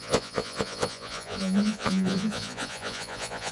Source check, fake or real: fake